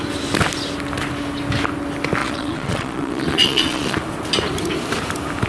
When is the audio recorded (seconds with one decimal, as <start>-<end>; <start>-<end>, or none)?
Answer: 0.0-2.2; 4.0-5.5